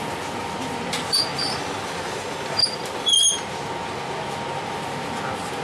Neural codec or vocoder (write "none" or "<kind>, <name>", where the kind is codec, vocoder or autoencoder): none